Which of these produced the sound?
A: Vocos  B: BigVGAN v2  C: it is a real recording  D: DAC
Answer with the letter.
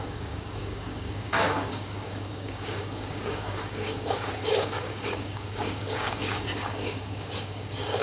D